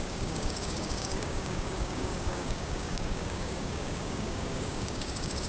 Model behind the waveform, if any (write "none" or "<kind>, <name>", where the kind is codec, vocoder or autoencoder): codec, DAC